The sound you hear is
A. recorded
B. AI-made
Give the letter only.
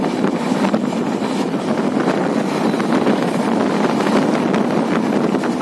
A